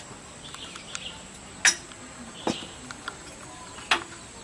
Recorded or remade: recorded